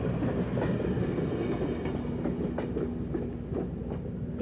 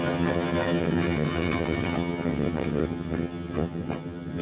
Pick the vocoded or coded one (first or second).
second